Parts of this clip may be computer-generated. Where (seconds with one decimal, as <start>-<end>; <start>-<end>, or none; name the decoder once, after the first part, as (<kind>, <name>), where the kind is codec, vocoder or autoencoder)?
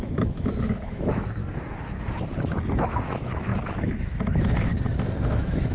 0.0-1.4 (autoencoder, DAC-VAE); 2.7-4.7; 5.3-5.7